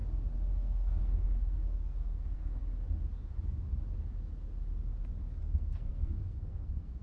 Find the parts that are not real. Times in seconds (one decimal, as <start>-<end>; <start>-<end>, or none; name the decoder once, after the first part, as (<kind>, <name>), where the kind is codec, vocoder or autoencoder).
0.5-2.6 (codec, SNAC); 5.4-7.0